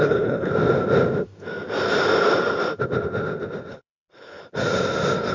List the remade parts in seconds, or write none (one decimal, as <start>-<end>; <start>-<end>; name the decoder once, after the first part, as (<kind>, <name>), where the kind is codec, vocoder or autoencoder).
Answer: 0.0-0.5 (codec, HILCodec); 3.7-4.4